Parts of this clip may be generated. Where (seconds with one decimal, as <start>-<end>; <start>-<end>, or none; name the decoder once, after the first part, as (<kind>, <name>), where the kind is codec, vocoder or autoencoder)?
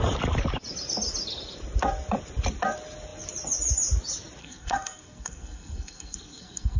4.4-6.8 (codec, SNAC)